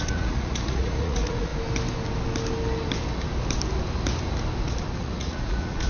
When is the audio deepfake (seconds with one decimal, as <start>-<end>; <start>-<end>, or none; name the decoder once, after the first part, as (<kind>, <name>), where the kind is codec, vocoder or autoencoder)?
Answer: 0.0-1.5 (vocoder, Vocos); 5.0-5.9